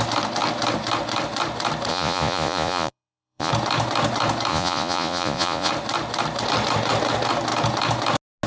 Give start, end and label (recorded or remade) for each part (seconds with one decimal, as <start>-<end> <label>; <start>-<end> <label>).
0.0-1.9 recorded; 1.9-3.5 remade; 3.5-4.5 recorded; 4.5-5.7 remade; 5.7-8.5 recorded